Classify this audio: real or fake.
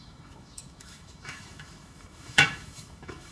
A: fake